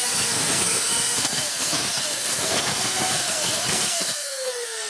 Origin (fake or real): fake